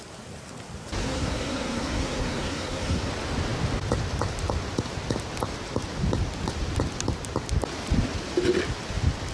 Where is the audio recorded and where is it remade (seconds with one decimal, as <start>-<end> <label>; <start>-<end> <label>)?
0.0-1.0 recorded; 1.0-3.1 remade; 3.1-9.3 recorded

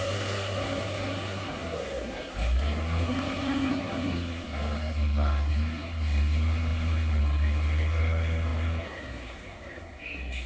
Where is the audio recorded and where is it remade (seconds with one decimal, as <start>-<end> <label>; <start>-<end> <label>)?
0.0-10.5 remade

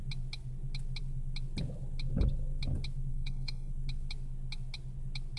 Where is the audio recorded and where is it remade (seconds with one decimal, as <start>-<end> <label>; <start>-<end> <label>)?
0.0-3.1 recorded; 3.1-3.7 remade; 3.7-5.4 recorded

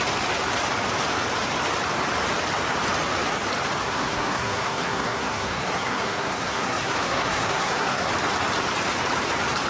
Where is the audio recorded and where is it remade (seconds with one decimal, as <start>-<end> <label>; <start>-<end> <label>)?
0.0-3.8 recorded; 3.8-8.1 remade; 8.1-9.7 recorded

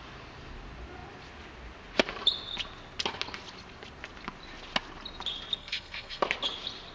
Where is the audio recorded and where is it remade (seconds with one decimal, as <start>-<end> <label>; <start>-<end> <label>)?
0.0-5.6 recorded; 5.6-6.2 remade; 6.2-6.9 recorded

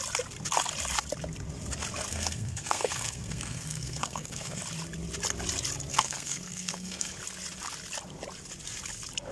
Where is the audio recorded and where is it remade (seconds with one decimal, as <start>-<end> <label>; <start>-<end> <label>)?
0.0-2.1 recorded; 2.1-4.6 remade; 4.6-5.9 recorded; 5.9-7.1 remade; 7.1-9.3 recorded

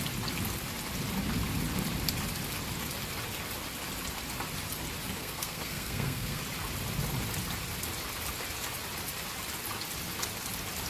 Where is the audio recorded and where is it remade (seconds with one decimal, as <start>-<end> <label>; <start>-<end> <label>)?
0.0-5.2 recorded; 5.2-6.4 remade; 6.4-10.9 recorded